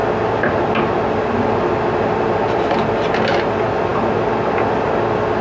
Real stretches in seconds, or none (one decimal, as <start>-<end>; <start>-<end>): 0.0-5.4